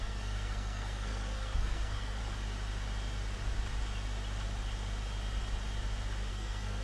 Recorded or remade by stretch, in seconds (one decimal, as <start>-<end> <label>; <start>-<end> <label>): 0.0-2.2 remade; 2.2-6.3 recorded; 6.3-6.8 remade

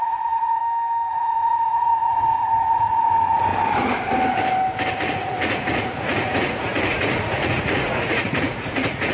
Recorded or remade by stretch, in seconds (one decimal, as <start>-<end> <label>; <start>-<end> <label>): 0.0-0.6 remade; 0.6-1.1 recorded; 1.1-3.5 remade; 3.5-4.9 recorded; 4.9-9.1 remade

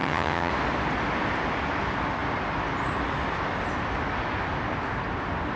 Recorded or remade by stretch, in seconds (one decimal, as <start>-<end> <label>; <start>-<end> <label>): 0.0-0.5 remade; 0.5-5.6 recorded